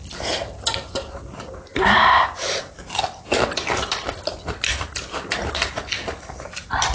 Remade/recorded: recorded